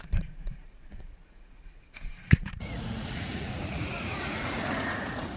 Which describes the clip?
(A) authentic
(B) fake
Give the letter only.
B